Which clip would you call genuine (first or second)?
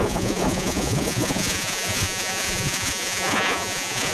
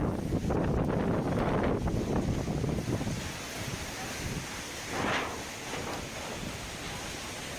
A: second